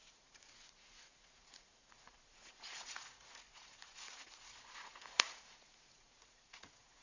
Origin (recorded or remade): remade